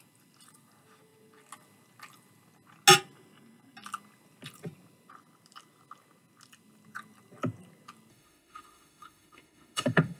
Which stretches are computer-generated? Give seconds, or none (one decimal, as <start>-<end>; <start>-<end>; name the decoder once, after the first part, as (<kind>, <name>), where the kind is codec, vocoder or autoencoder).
8.1-10.2 (autoencoder, DAC-VAE)